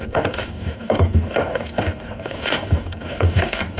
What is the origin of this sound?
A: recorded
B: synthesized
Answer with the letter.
B